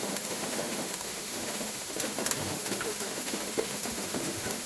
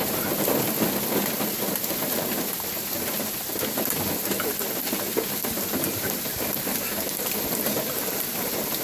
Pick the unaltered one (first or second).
second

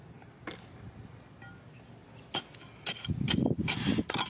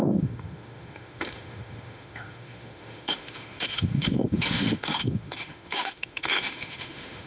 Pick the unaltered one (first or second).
first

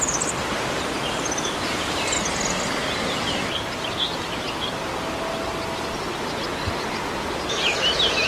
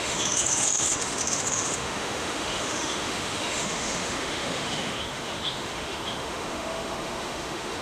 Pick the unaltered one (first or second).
first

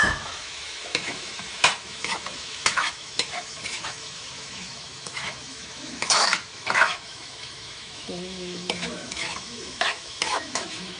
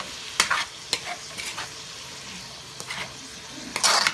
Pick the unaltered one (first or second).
second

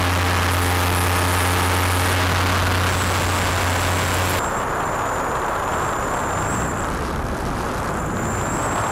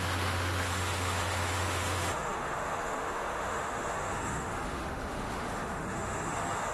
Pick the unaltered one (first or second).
first